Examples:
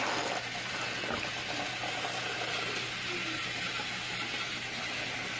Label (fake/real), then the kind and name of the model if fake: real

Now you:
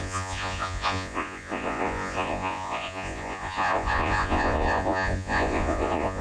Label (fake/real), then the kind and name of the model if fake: fake, vocoder, Vocos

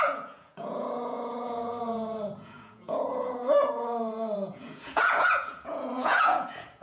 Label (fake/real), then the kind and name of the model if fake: fake, vocoder, Vocos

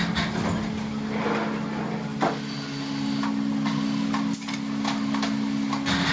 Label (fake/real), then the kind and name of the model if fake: real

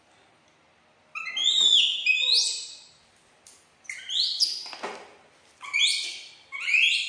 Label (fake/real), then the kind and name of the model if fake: real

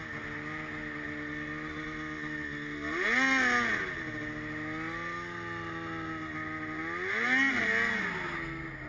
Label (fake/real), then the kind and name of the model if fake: real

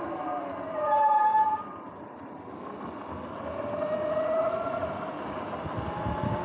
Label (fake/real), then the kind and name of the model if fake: real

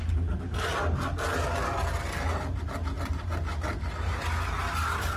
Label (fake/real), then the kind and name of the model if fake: real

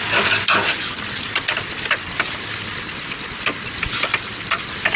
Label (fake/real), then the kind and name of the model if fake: real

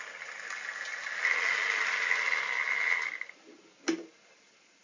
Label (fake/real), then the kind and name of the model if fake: real